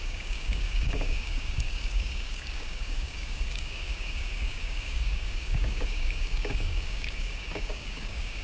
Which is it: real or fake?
fake